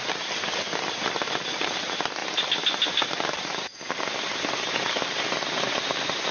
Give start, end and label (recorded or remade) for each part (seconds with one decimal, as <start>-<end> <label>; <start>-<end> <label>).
0.0-6.3 recorded